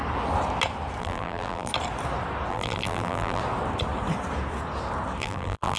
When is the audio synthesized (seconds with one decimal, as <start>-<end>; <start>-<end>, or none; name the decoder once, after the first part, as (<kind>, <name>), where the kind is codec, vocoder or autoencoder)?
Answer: 1.0-1.7 (vocoder, BigVGAN v2); 2.5-3.4; 5.2-5.8